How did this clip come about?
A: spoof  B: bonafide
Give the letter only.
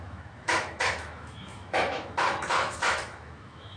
A